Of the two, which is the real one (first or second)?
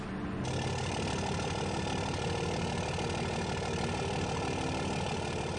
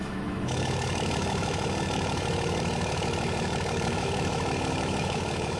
first